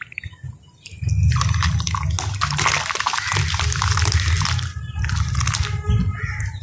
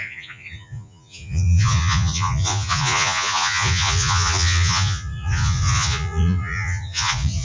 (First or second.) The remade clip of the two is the second